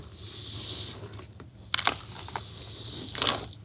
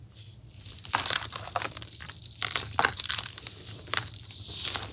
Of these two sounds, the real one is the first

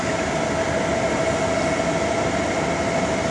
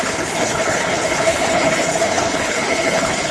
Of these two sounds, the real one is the first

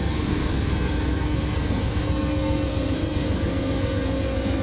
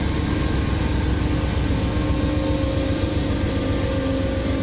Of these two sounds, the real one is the second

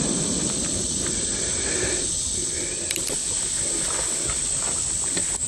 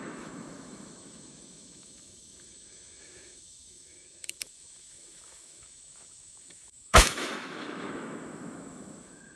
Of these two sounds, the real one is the first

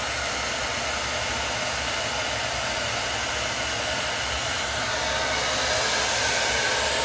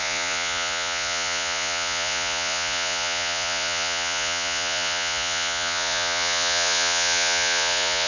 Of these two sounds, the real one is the first